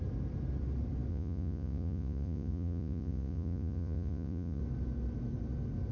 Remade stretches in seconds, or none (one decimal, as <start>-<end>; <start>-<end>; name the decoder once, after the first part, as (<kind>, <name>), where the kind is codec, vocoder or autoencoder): 1.1-4.6 (vocoder, Vocos)